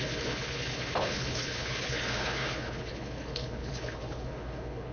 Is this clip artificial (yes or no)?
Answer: yes